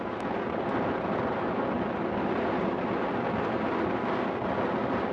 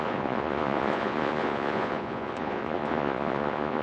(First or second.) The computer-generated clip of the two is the second